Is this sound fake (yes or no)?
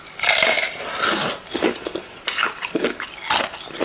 no